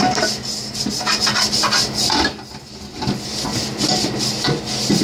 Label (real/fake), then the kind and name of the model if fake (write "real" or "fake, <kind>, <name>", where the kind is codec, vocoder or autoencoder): real